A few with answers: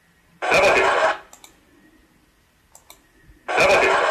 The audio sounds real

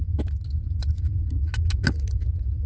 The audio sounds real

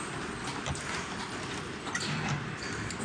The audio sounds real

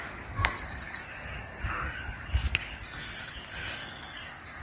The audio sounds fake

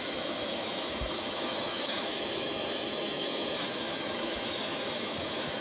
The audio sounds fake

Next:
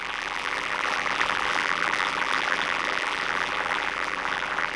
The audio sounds fake